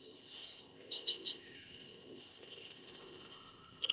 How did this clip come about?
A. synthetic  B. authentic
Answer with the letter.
A